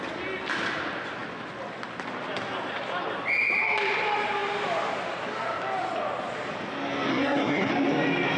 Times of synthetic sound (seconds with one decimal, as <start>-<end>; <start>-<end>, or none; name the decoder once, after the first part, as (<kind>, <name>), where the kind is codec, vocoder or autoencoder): 7.1-7.7 (codec, SNAC)